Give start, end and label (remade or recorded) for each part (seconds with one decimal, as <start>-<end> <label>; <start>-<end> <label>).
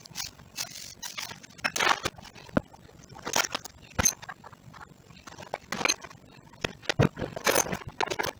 0.0-8.4 recorded